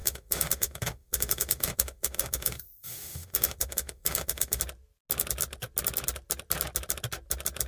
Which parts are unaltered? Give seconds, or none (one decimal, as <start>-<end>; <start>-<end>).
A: 4.6-7.7